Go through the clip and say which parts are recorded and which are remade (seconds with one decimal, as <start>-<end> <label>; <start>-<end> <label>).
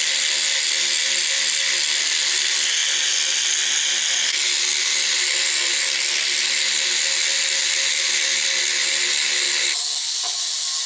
0.0-10.9 recorded